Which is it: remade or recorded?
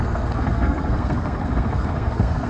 remade